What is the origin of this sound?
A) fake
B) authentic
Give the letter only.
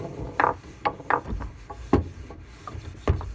B